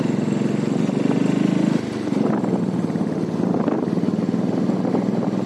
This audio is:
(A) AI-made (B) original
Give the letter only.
B